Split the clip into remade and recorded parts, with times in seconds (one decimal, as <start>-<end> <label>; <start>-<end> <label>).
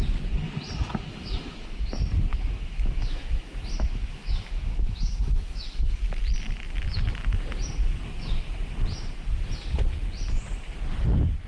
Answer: 0.0-1.1 recorded; 1.1-1.9 remade; 1.9-2.3 recorded; 2.3-6.2 remade; 6.2-11.5 recorded